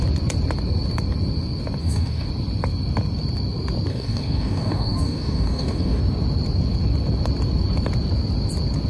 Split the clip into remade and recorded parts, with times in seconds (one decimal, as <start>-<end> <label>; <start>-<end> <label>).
0.0-1.8 recorded; 1.8-2.3 remade; 2.3-3.9 recorded; 3.9-6.0 remade; 6.0-8.9 recorded